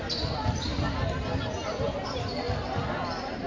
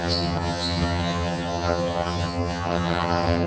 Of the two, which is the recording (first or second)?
first